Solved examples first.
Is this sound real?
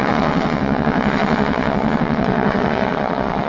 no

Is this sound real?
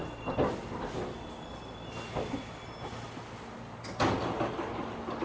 yes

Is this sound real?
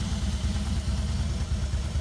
no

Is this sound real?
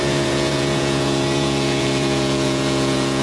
no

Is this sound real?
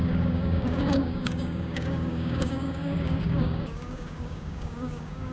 no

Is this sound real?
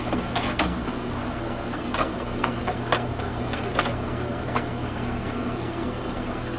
no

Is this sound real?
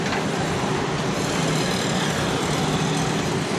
yes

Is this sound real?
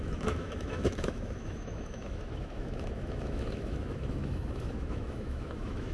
no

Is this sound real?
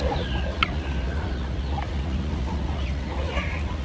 no